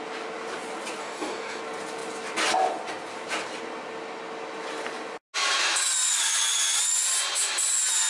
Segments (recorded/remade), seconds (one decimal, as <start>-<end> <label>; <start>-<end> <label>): 0.0-1.0 recorded; 1.0-1.6 remade; 1.6-8.1 recorded